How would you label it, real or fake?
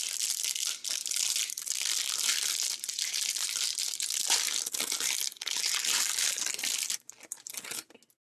real